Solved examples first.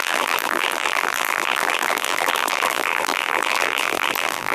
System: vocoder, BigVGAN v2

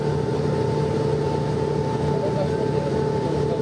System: none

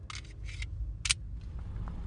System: none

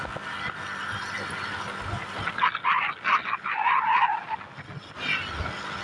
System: none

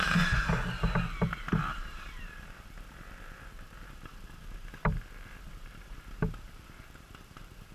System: vocoder, BigVGAN v2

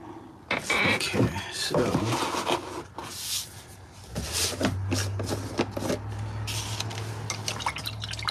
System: none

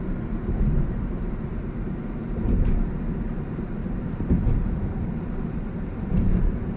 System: vocoder, BigVGAN v2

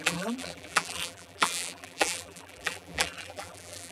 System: vocoder, BigVGAN v2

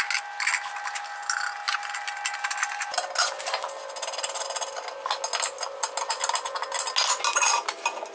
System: none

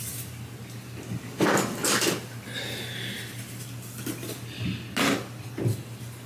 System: none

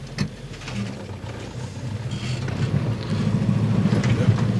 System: none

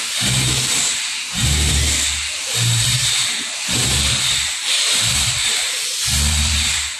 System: vocoder, BigVGAN v2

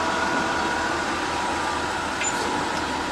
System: vocoder, BigVGAN v2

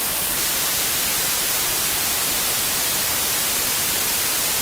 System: vocoder, BigVGAN v2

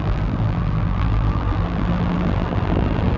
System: vocoder, BigVGAN v2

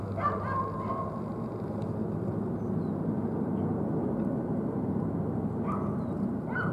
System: vocoder, BigVGAN v2